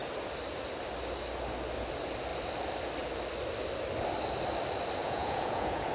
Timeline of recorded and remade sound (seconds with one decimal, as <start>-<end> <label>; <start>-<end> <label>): 0.0-5.0 recorded; 5.0-5.9 remade